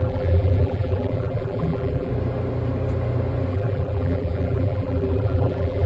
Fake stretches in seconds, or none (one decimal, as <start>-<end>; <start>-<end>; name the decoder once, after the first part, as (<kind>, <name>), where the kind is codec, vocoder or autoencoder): 0.0-2.1 (vocoder, BigVGAN v2); 3.5-5.9